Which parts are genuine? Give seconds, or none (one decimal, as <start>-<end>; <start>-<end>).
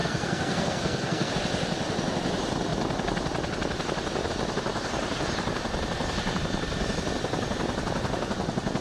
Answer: 1.3-8.8